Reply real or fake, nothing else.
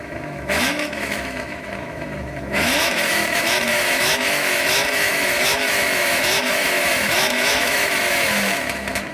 fake